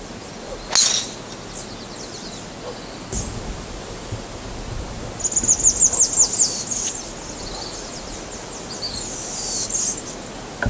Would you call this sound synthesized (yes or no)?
no